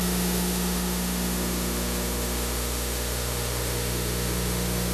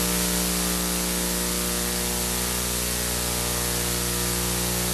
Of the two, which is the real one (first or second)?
second